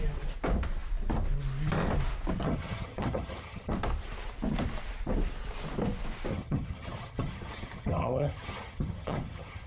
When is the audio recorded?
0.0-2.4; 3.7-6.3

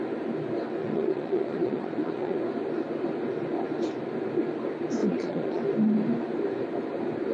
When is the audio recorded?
0.0-0.8; 2.4-5.0; 5.6-7.3

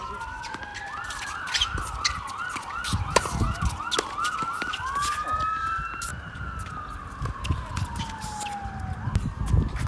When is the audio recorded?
0.0-9.9

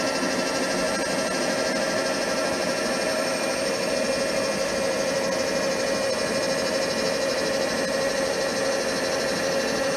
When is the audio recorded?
0.0-3.1; 3.9-10.0

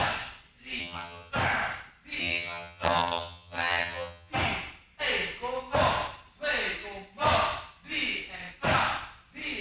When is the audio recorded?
0.0-0.8; 1.3-2.2; 4.3-9.6

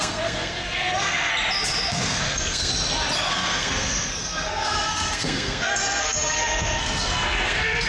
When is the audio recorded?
1.3-1.9; 2.7-3.3

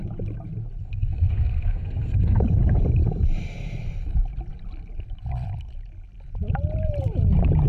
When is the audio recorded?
0.0-0.8; 2.4-7.7

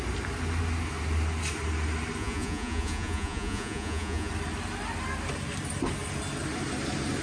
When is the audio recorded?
0.0-2.2; 4.3-7.2